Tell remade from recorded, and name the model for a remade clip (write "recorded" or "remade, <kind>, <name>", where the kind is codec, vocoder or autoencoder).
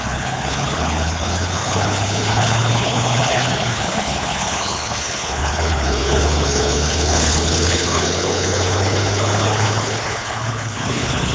remade, codec, HILCodec